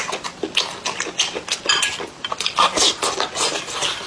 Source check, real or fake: real